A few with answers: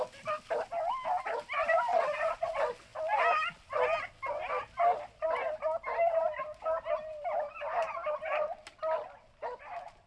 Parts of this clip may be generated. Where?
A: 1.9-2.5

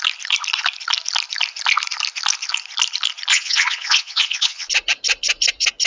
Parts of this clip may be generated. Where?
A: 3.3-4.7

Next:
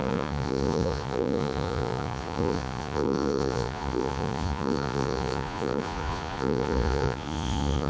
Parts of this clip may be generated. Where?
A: 0.0-7.9

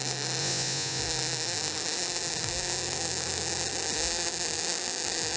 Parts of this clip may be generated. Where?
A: 0.4-1.0

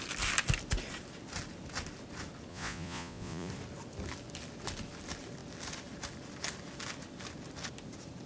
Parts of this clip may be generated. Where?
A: 2.5-3.5

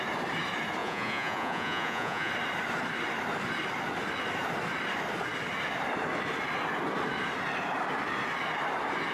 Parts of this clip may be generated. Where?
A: 0.8-2.3

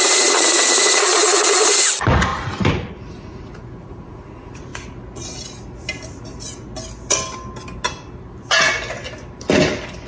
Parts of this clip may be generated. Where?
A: 0.0-2.3; 3.1-4.7

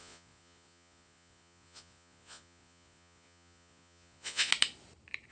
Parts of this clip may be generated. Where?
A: 0.0-4.5